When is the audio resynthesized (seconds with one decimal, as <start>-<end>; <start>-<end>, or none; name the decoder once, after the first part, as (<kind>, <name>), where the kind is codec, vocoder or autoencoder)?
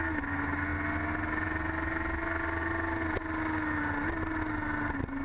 none